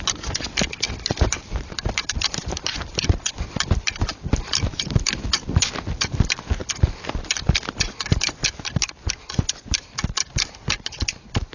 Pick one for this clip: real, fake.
real